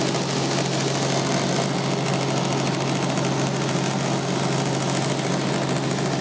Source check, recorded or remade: recorded